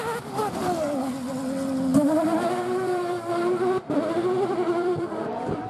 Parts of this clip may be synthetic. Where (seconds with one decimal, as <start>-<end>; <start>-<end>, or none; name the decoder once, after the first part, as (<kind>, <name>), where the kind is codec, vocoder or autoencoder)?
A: 1.9-5.3 (vocoder, BigVGAN v2)